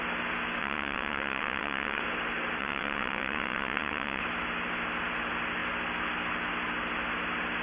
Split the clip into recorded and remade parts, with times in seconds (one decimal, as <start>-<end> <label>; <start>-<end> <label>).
0.0-0.6 recorded; 0.6-2.0 remade; 2.0-2.6 recorded; 2.6-4.2 remade; 4.2-7.6 recorded